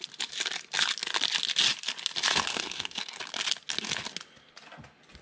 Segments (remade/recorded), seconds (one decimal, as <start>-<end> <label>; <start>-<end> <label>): 0.0-2.5 recorded; 2.5-3.2 remade; 3.2-5.2 recorded